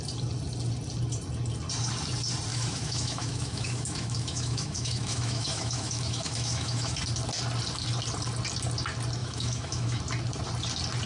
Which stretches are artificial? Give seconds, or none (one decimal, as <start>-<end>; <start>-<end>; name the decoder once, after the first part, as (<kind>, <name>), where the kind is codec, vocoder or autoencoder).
2.5-7.0 (autoencoder, DAC-VAE); 9.2-10.0